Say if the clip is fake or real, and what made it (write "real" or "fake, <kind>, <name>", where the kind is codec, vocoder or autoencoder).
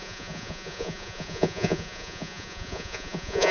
fake, vocoder, Vocos